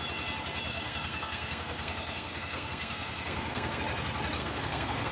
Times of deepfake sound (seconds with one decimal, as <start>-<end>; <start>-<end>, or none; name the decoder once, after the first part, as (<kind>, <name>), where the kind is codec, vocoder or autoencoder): 0.7-3.8 (codec, SNAC); 4.4-5.1